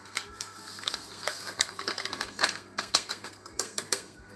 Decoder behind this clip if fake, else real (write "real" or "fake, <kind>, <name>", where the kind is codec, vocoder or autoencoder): fake, codec, SNAC